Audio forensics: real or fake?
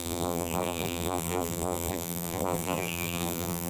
fake